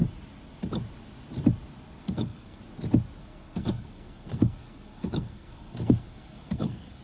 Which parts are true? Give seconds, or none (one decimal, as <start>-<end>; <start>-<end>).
0.0-2.0; 2.6-3.2